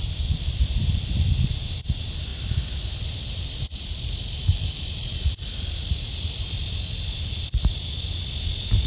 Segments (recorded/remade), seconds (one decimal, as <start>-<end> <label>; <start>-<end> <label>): 0.0-8.9 recorded